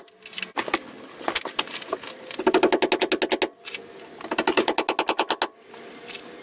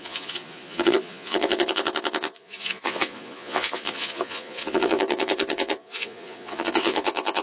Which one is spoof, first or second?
second